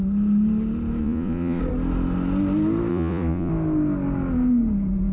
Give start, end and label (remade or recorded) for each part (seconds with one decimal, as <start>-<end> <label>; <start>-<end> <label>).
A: 0.0-1.0 recorded; 1.0-1.6 remade; 1.6-2.9 recorded; 2.9-3.5 remade; 3.5-5.1 recorded